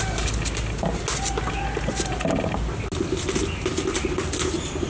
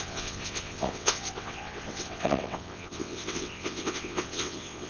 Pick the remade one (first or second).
second